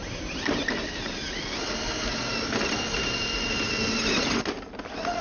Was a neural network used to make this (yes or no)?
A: no